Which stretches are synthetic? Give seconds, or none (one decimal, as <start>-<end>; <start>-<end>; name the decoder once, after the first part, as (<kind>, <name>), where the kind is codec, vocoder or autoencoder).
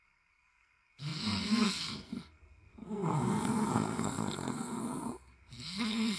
0.0-6.2 (codec, SNAC)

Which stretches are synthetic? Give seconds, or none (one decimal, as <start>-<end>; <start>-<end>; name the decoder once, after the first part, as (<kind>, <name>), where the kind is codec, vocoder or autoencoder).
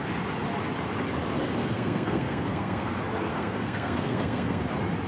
1.6-2.9 (codec, SNAC); 3.3-4.6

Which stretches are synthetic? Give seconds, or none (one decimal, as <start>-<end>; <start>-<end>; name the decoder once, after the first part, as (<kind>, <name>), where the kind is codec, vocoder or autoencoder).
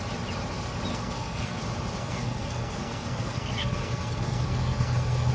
0.9-1.6 (codec, SNAC); 2.0-5.3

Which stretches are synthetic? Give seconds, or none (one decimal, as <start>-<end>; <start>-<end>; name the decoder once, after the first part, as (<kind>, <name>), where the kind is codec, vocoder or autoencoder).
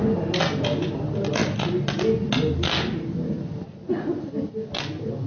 none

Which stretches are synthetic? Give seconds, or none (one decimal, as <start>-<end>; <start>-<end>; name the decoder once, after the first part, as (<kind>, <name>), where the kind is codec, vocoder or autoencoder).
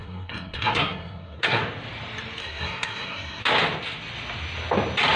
0.0-1.6 (codec, SNAC); 2.4-3.4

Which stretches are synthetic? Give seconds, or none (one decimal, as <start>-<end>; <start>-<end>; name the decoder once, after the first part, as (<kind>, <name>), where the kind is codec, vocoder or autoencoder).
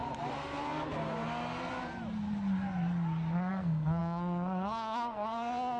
3.5-5.8 (codec, SNAC)